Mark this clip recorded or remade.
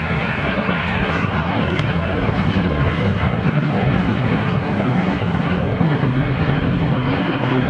remade